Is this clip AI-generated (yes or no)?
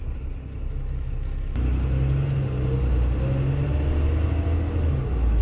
no